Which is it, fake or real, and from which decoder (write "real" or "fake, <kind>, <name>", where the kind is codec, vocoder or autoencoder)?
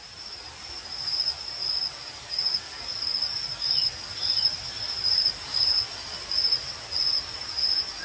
real